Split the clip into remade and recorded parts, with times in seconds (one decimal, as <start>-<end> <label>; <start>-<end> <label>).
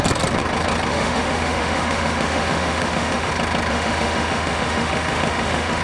0.0-0.9 recorded; 0.9-3.3 remade; 3.3-3.7 recorded; 3.7-5.8 remade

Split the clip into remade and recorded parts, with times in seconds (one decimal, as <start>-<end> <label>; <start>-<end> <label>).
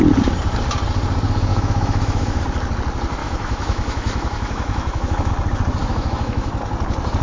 0.0-1.5 recorded; 1.5-2.4 remade; 2.4-3.2 recorded; 3.2-5.3 remade; 5.3-5.8 recorded; 5.8-6.5 remade; 6.5-7.2 recorded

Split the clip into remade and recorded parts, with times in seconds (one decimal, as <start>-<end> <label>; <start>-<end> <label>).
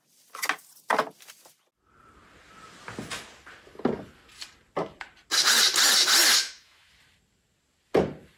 0.0-6.4 recorded; 6.4-6.9 remade; 6.9-8.4 recorded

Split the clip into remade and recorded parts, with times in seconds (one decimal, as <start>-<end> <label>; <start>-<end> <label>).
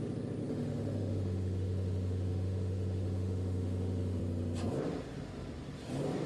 0.0-0.4 recorded; 0.4-4.2 remade; 4.2-6.3 recorded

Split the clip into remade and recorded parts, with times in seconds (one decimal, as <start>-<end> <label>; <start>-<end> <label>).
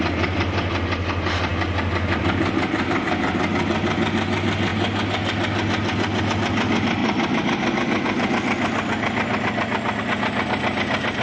0.0-11.2 recorded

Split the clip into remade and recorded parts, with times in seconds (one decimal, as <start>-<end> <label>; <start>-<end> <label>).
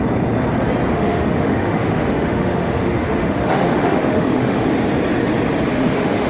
0.0-0.9 recorded; 0.9-4.7 remade; 4.7-5.7 recorded; 5.7-6.3 remade